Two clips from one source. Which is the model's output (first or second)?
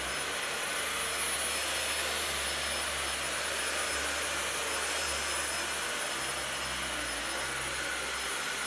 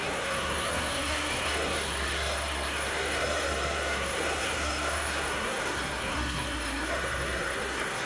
second